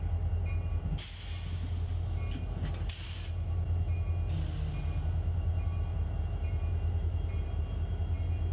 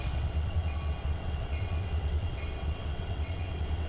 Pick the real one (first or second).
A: first